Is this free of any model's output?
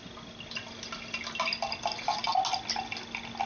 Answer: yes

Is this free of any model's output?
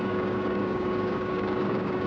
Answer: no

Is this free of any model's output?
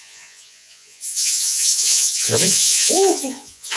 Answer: no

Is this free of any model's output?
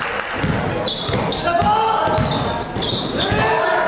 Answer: yes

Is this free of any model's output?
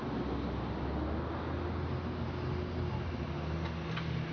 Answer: yes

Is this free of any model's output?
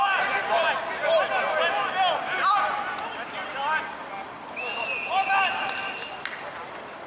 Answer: yes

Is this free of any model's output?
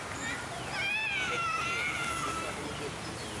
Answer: yes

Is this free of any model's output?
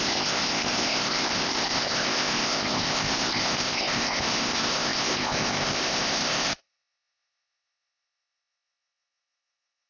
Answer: no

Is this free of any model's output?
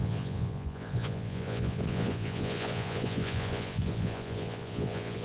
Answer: no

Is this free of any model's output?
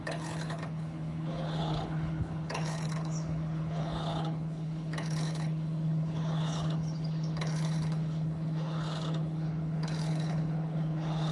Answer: no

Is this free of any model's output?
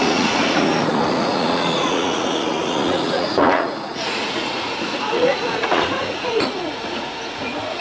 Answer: no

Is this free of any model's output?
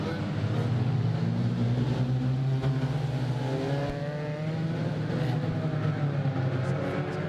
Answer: yes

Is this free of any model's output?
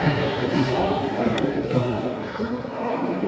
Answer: no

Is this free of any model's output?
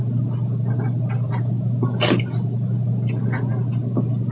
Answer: yes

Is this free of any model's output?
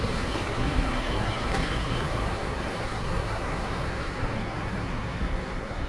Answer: no